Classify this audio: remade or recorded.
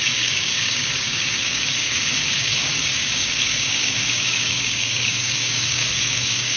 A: remade